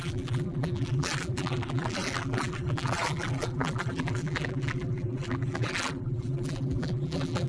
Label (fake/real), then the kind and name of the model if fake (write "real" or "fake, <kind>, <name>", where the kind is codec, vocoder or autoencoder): fake, vocoder, BigVGAN v2